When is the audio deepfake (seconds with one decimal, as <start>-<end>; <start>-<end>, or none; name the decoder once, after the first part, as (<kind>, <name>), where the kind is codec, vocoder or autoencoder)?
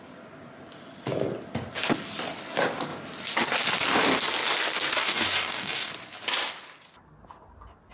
5.0-5.9 (codec, DAC)